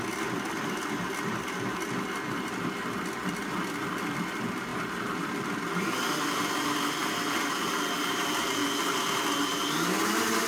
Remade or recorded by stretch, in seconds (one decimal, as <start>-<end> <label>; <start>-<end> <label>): 0.0-10.5 recorded

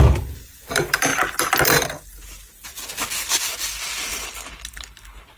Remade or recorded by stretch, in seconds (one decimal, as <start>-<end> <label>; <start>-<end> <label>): 0.0-5.4 recorded

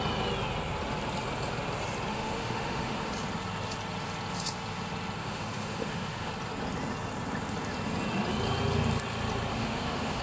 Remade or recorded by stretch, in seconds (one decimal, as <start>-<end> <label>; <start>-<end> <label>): 0.0-2.1 recorded; 2.1-3.1 remade; 3.1-5.2 recorded; 5.2-6.3 remade; 6.3-9.5 recorded; 9.5-10.2 remade

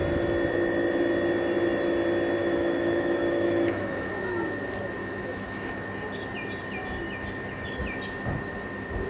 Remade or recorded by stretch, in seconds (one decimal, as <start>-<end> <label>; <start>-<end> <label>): 0.0-2.4 recorded; 2.4-4.1 remade; 4.1-5.0 recorded; 5.0-5.7 remade; 5.7-9.1 recorded

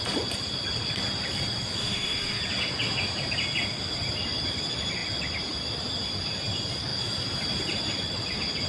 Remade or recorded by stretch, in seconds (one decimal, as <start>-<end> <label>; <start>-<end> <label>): 0.0-1.8 recorded; 1.8-2.4 remade; 2.4-8.7 recorded

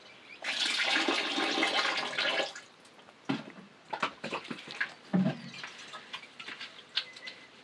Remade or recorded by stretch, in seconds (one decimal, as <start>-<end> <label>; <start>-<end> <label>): 0.0-7.6 recorded